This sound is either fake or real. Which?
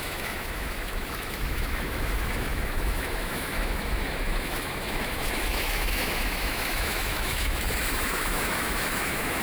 fake